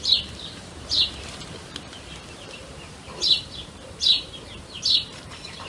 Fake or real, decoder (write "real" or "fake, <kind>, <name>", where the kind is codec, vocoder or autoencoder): fake, vocoder, BigVGAN v2